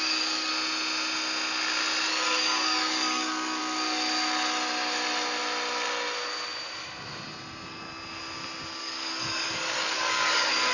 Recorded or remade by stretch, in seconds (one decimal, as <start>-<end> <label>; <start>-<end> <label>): 0.0-0.5 remade; 0.5-2.1 recorded; 2.1-3.6 remade; 3.6-8.8 recorded; 8.8-10.7 remade